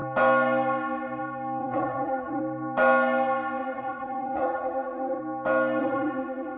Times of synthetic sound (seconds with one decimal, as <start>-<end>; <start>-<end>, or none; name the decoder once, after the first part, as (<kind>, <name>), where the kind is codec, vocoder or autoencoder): 1.6-2.4 (vocoder, Vocos); 3.6-5.2; 5.8-6.6